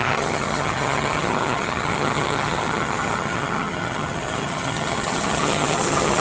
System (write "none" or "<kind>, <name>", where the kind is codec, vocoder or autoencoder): vocoder, HiFi-GAN